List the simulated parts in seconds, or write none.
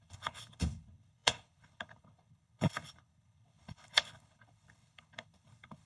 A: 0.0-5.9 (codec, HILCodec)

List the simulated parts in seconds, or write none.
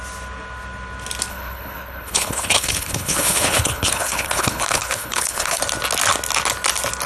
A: 1.3-5.6 (codec, HILCodec)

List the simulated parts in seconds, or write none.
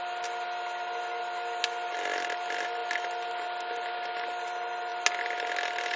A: none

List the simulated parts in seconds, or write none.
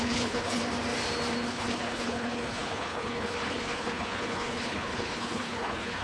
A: 0.0-0.6 (codec, HILCodec); 1.5-6.0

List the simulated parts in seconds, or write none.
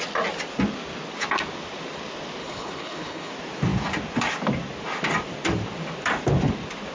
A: 2.4-3.3 (codec, HILCodec)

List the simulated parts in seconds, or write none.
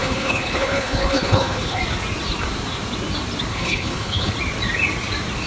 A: 0.0-1.8 (codec, HILCodec); 3.5-4.3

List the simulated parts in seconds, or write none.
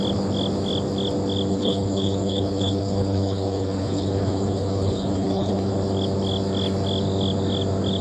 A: 1.5-5.7 (codec, HILCodec)